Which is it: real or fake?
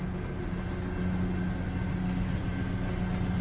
real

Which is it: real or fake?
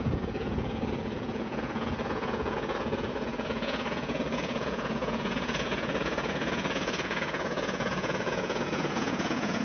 fake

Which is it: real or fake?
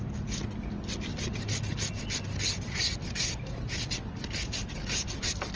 real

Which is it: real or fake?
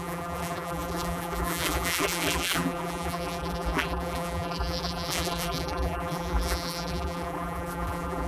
fake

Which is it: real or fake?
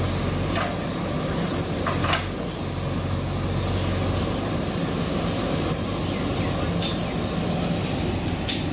real